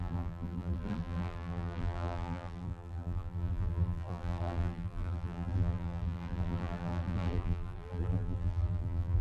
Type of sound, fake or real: fake